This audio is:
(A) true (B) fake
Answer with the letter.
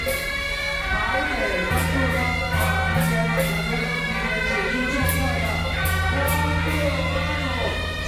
A